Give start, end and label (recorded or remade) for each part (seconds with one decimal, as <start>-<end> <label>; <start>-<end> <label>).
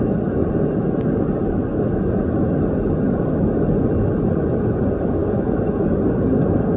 0.0-6.8 recorded